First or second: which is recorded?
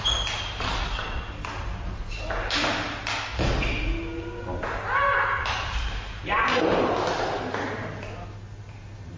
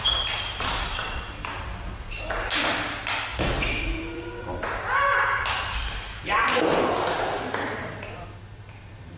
first